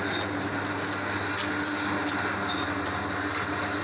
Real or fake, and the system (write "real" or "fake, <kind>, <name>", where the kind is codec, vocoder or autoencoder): real